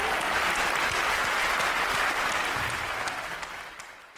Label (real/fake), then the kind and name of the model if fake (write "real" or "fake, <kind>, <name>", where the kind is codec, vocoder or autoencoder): real